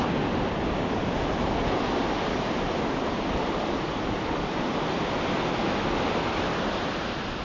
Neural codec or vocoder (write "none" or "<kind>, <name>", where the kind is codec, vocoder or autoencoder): vocoder, BigVGAN v2